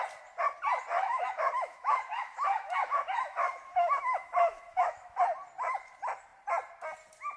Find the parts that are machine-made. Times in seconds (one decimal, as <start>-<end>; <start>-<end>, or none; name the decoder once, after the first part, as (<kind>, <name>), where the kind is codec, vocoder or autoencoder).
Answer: 0.9-5.2 (autoencoder, DAC-VAE)